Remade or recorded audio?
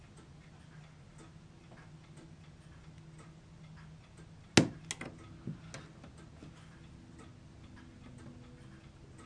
recorded